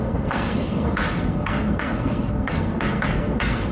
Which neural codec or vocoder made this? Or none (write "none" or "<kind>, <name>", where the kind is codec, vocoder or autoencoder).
codec, SNAC